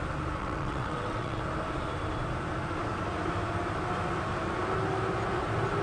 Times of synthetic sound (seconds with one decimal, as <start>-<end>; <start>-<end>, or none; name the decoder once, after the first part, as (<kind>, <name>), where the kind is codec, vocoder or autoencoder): 0.4-1.4 (vocoder, WaveNeXt)

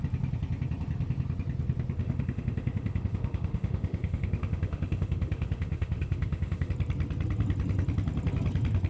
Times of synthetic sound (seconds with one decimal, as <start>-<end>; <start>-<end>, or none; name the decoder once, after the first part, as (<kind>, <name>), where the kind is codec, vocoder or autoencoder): 2.0-6.7 (autoencoder, DAC-VAE)